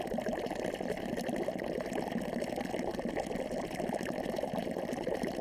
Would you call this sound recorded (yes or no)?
yes